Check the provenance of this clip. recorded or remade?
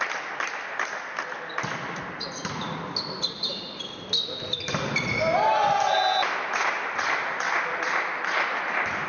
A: recorded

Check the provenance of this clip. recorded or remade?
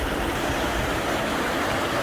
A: recorded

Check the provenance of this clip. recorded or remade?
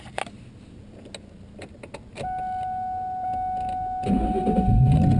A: recorded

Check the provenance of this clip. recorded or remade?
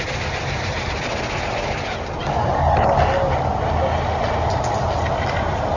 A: recorded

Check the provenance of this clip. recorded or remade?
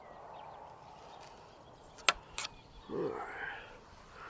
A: recorded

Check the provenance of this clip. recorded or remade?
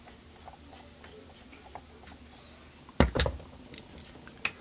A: recorded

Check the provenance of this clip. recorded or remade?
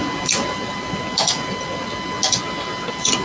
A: recorded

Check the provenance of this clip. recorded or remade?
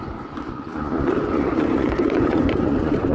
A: remade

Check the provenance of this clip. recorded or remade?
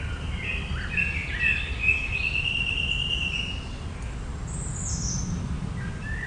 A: recorded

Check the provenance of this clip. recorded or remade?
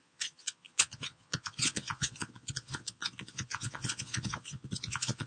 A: remade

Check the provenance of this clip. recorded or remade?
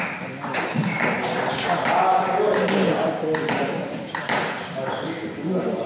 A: recorded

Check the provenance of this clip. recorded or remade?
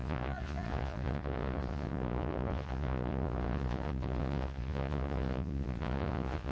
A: remade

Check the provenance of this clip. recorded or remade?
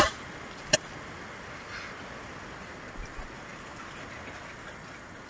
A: recorded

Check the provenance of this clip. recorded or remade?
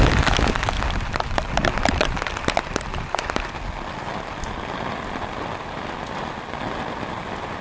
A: recorded